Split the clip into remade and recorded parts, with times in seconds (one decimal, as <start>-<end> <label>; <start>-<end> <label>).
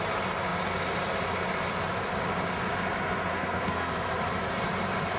0.0-3.3 recorded; 3.3-3.9 remade; 3.9-5.2 recorded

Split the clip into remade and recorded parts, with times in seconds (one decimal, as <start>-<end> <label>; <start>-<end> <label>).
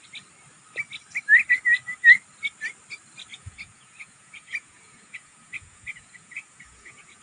0.0-3.3 recorded; 3.3-7.2 remade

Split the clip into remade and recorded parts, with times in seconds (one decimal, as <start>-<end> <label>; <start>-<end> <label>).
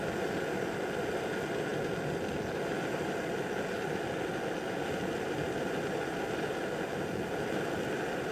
0.0-8.3 recorded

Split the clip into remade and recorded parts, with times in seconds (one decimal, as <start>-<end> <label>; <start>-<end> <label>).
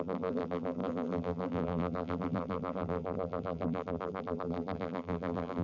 0.0-5.6 remade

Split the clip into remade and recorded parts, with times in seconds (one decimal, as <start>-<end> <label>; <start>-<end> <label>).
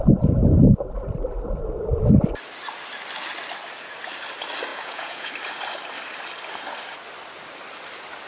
0.0-4.7 recorded; 4.7-5.3 remade; 5.3-8.3 recorded